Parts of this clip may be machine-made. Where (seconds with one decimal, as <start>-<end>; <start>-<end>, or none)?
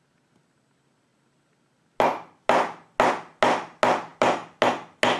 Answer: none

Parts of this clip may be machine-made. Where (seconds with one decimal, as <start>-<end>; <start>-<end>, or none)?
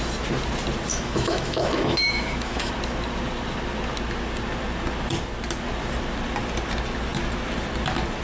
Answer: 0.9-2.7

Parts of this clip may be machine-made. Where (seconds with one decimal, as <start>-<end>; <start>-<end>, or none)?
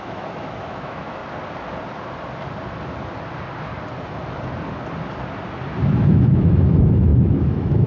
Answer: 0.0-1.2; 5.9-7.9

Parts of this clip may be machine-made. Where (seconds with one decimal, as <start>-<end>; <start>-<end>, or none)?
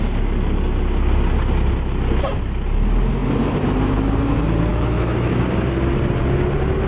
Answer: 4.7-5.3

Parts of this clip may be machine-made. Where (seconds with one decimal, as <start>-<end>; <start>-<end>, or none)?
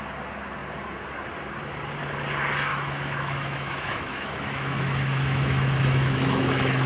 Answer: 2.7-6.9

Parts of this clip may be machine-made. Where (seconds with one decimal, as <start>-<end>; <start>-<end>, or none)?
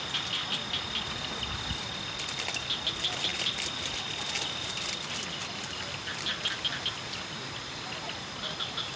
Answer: none